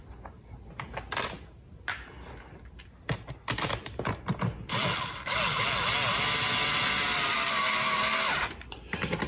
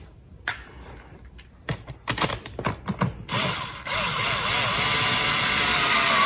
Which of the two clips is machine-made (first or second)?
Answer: second